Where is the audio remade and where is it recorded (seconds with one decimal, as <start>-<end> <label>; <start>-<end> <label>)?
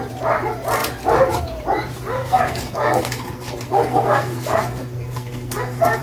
0.0-2.1 recorded; 2.1-6.0 remade